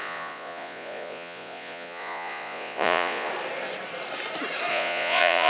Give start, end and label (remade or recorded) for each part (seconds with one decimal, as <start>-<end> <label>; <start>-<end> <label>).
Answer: 0.0-3.3 remade; 3.3-4.7 recorded; 4.7-5.5 remade